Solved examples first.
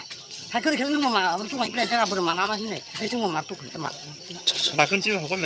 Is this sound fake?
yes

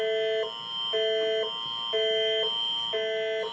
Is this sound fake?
no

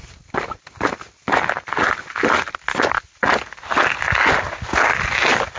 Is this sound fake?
no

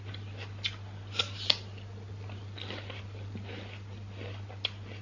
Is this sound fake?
no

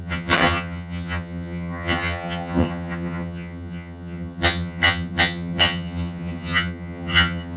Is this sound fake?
yes